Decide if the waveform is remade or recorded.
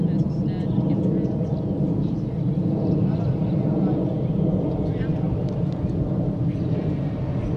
recorded